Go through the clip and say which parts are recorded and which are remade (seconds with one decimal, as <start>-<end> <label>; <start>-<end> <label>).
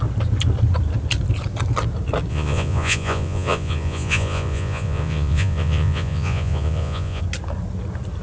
0.0-2.3 recorded; 2.3-7.2 remade; 7.2-8.2 recorded